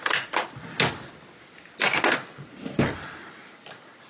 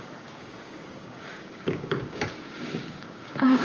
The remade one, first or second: second